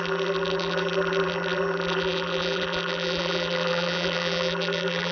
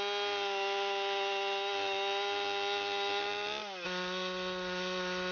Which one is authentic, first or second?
second